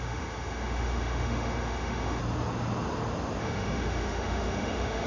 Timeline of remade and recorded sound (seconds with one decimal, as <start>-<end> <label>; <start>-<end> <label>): 0.0-2.2 remade; 2.2-3.4 recorded; 3.4-5.1 remade

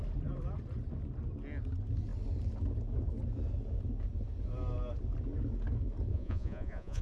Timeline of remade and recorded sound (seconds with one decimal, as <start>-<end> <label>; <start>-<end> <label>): 0.0-6.1 recorded; 6.1-7.0 remade

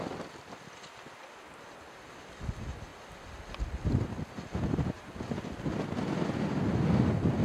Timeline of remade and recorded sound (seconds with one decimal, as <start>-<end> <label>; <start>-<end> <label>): 0.0-7.4 recorded